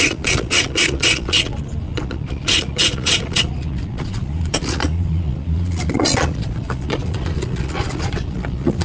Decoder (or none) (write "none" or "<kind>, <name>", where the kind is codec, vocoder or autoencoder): vocoder, Vocos